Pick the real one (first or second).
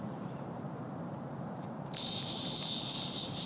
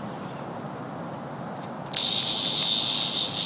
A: second